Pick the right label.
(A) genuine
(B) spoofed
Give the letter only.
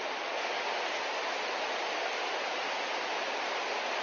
A